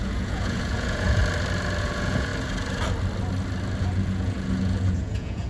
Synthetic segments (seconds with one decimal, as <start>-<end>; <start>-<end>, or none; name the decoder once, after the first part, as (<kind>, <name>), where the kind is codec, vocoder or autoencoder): 0.0-1.2 (vocoder, Vocos); 1.8-2.3; 3.8-5.5